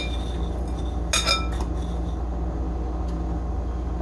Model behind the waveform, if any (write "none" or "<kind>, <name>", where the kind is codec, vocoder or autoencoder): none